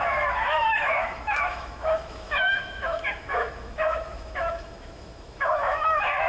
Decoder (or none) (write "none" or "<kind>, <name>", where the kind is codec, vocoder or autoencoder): autoencoder, DAC-VAE